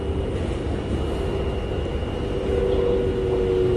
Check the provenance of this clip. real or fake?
real